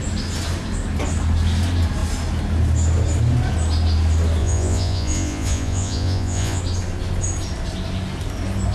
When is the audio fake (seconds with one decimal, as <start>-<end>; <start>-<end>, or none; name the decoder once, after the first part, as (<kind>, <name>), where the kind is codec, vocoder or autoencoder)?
4.4-6.6 (vocoder, Vocos)